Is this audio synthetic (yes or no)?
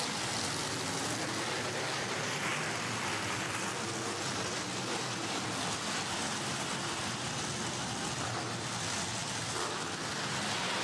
no